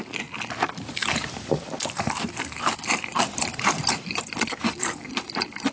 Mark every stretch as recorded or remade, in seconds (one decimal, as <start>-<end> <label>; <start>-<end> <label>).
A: 0.0-1.0 recorded; 1.0-2.6 remade; 2.6-5.7 recorded